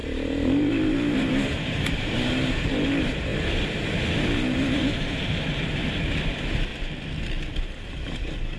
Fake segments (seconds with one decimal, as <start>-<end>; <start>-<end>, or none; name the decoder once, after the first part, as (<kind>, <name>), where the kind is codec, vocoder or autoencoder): 0.0-6.7 (vocoder, BigVGAN v2); 7.9-8.6